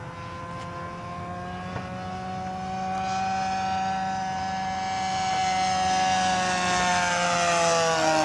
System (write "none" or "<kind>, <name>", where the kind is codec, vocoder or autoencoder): none